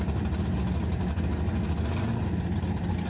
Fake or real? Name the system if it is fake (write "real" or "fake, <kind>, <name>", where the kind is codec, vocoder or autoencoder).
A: real